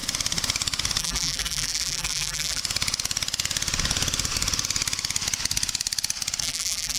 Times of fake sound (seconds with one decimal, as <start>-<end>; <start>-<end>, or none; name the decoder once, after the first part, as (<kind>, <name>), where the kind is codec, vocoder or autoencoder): 1.0-2.6 (vocoder, BigVGAN v2); 6.4-7.0